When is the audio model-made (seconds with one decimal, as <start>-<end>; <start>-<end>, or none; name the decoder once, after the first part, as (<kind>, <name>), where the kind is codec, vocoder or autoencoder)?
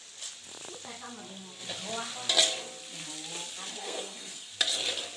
3.7-4.5 (codec, SNAC)